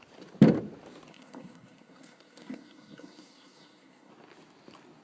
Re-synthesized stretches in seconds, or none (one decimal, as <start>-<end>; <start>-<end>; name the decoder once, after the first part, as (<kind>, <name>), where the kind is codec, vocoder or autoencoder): 1.1-4.1 (codec, SNAC)